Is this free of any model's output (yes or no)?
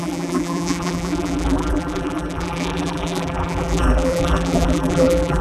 no